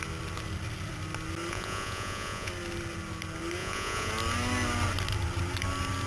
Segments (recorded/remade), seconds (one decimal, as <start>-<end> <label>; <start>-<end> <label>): 0.0-1.5 recorded; 1.5-2.5 remade; 2.5-3.6 recorded; 3.6-4.1 remade; 4.1-6.1 recorded